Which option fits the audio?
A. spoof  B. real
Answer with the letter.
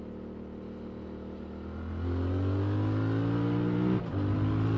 B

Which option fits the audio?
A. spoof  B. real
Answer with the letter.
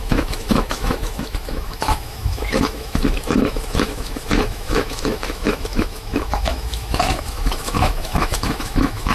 A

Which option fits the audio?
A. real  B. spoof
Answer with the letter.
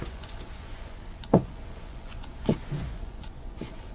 B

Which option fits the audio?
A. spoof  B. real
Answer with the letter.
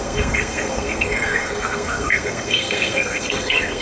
A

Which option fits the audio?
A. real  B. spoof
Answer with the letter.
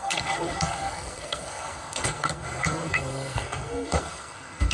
B